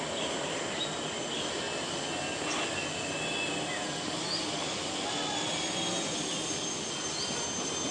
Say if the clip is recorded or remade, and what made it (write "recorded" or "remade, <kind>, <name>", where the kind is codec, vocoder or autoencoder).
recorded